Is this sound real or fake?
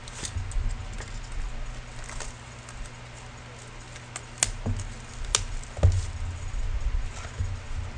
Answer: real